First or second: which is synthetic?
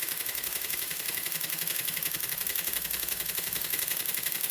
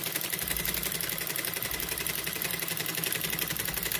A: first